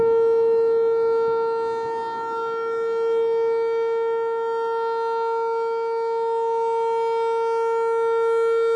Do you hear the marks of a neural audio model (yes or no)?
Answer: no